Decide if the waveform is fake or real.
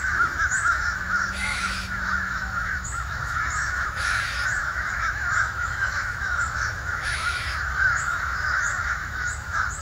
fake